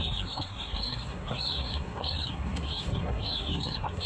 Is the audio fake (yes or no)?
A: yes